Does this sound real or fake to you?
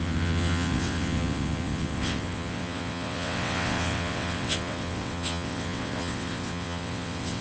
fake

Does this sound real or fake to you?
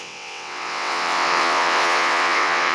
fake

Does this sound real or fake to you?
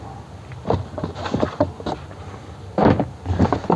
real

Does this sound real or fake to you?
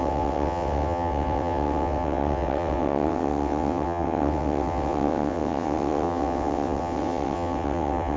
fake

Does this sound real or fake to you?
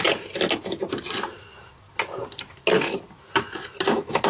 real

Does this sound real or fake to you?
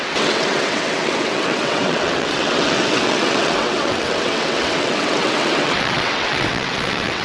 fake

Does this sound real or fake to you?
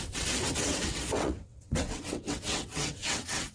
fake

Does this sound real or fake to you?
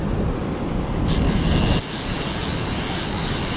real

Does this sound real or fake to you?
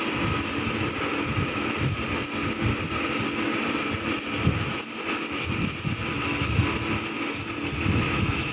real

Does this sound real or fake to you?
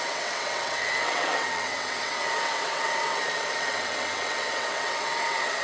fake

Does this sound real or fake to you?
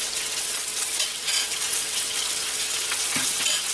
fake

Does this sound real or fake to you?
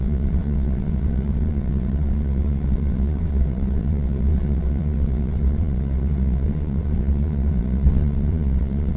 fake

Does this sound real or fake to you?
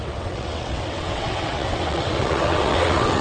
fake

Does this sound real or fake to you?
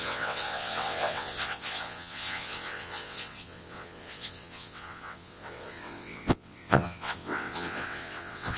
fake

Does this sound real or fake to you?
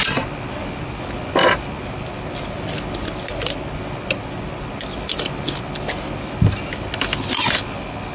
real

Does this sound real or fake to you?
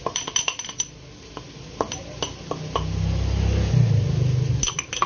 real